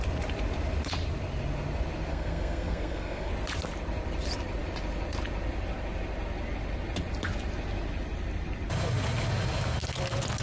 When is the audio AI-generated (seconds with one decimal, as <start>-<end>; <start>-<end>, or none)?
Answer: 2.1-3.3